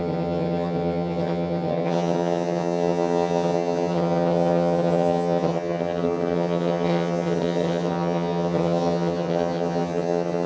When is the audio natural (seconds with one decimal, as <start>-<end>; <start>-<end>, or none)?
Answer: none